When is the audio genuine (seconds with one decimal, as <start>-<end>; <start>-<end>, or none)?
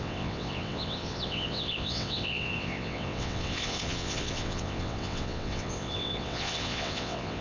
none